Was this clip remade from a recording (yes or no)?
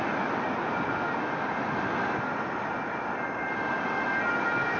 no